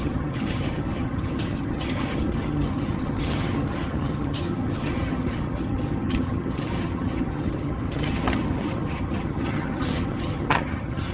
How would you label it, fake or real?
fake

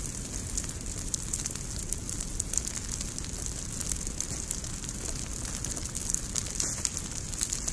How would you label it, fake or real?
real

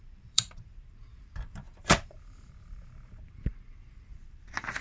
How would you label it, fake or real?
fake